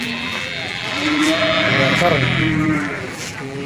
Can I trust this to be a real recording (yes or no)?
no